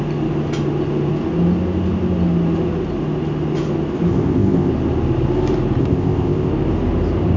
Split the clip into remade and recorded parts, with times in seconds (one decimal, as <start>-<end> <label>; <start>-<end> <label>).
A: 0.0-4.1 recorded; 4.1-4.7 remade; 4.7-5.8 recorded; 5.8-6.5 remade; 6.5-7.4 recorded